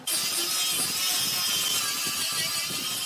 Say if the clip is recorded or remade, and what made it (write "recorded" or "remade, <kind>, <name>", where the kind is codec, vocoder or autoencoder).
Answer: recorded